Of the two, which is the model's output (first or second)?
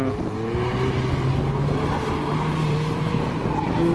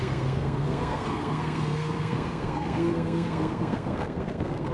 second